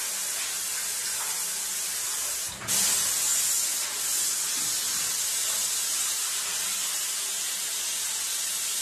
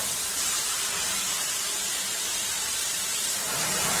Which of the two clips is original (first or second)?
first